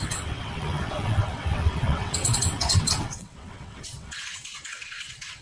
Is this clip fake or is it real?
fake